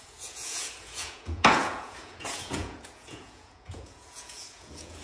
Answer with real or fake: fake